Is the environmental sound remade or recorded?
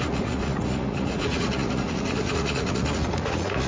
remade